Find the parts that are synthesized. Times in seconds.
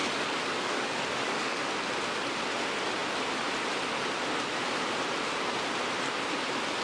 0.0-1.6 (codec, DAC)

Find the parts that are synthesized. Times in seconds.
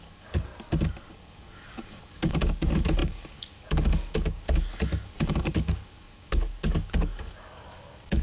0.0-0.5 (codec, DAC); 1.1-8.2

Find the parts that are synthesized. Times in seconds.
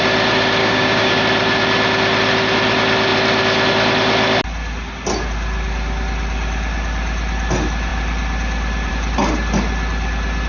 0.6-1.2 (codec, DAC)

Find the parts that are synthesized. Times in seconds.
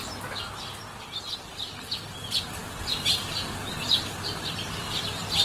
none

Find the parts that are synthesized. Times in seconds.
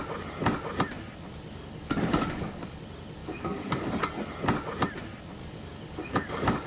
1.5-2.8 (codec, DAC); 3.2-4.0; 5.4-6.7